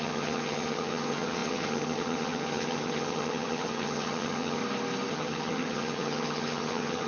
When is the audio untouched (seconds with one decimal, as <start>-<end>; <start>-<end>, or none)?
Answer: 4.6-5.1